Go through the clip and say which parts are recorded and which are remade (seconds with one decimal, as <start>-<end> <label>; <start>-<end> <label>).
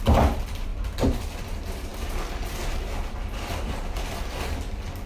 0.0-5.1 recorded